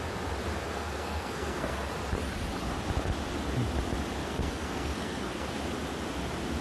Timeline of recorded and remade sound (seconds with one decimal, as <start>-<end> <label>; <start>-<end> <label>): 0.0-0.6 recorded; 0.6-1.9 remade; 1.9-4.2 recorded; 4.2-5.6 remade; 5.6-6.6 recorded